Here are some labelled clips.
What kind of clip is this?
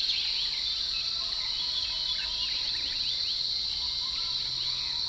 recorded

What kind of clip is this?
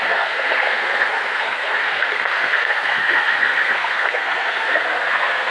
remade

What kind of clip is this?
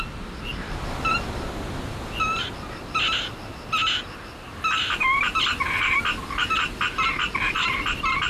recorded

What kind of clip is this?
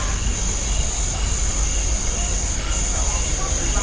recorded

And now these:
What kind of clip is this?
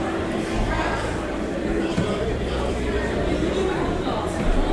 remade